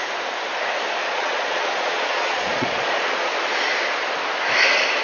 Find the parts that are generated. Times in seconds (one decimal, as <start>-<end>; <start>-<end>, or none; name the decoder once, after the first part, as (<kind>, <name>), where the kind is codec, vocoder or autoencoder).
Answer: 1.0-3.3 (vocoder, Vocos)